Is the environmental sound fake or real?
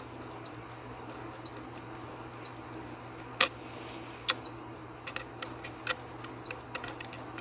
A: real